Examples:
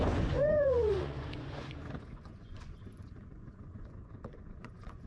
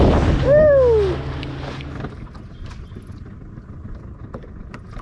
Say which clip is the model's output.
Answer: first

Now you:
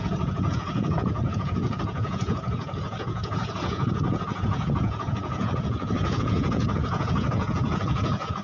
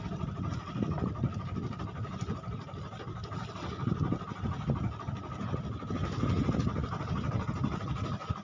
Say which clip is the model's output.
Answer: first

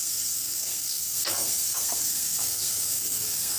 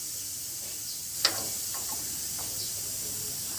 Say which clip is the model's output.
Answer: first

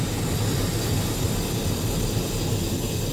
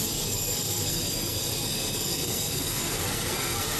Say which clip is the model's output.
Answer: second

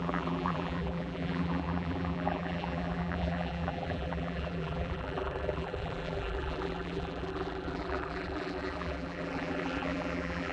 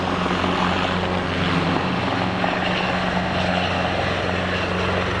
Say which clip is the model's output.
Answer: first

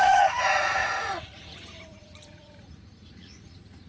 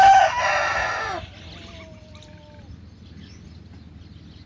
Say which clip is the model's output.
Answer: first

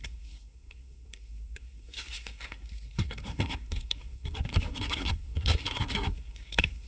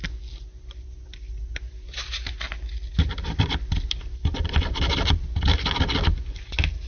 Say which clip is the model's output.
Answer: first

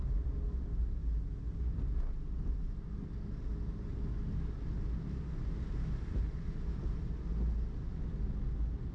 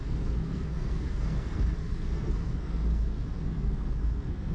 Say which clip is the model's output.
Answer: second